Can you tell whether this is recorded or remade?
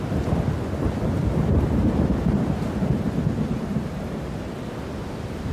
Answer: recorded